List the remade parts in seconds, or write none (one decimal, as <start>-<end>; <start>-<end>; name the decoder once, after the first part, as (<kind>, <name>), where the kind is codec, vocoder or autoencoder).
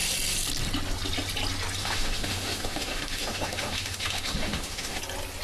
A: 1.8-5.0 (autoencoder, DAC-VAE)